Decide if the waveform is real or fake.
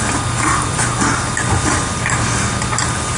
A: real